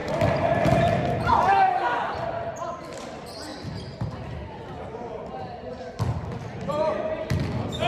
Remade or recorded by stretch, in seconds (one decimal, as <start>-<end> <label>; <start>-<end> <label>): 0.0-7.9 recorded